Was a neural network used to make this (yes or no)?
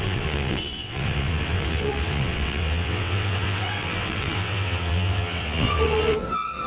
yes